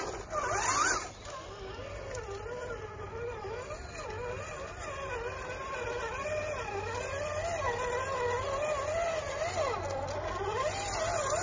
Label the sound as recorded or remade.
recorded